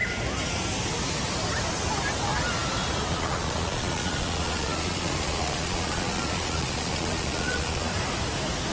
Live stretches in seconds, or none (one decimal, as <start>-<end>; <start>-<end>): 0.0-3.1; 7.9-8.7